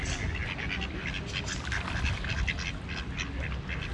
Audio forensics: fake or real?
real